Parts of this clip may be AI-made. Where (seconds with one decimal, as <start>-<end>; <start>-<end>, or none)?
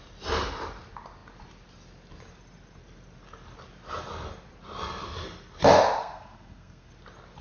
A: 6.0-6.9